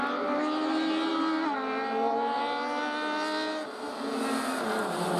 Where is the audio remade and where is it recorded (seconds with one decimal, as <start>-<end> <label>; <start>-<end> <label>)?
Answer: 0.0-5.2 recorded